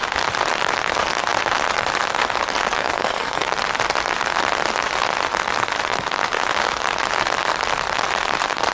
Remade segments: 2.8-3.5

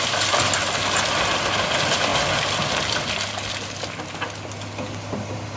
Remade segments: none

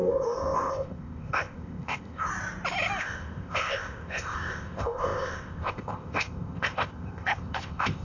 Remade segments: 0.0-2.3; 3.0-8.0

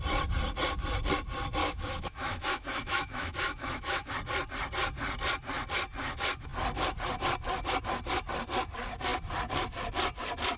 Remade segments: 1.6-4.1

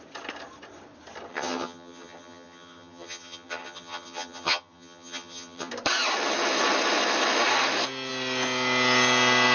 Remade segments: 1.3-5.7

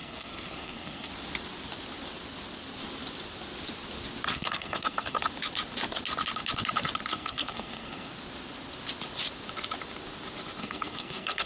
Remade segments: 0.0-1.1; 4.3-5.2; 7.1-8.1; 10.6-11.5